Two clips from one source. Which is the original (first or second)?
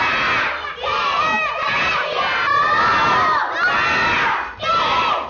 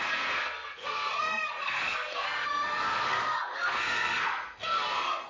first